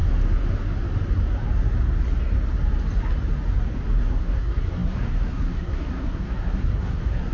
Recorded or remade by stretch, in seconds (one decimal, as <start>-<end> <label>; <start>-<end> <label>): 0.0-4.0 recorded; 4.0-7.3 remade

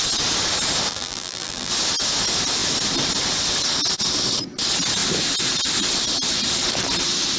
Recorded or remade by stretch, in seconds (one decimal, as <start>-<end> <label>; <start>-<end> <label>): 0.0-0.9 recorded; 0.9-1.7 remade; 1.7-7.4 recorded

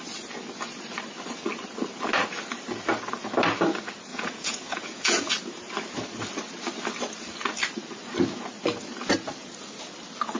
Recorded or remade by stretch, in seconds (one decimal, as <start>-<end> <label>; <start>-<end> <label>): 0.0-4.1 recorded; 4.1-5.3 remade; 5.3-10.4 recorded

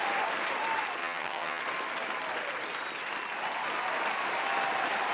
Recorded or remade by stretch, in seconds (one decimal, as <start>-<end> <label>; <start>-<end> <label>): 0.0-1.0 recorded; 1.0-1.6 remade; 1.6-5.1 recorded

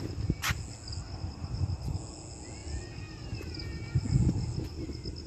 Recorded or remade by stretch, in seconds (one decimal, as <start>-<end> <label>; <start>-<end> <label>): 0.0-5.3 recorded

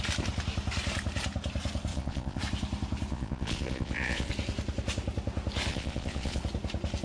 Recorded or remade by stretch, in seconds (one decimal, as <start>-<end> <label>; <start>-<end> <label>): 0.0-1.9 recorded; 1.9-2.4 remade; 2.4-3.1 recorded; 3.1-4.3 remade; 4.3-5.7 recorded; 5.7-6.4 remade; 6.4-7.0 recorded